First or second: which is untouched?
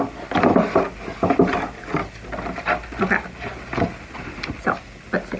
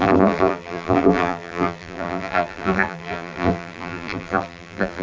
first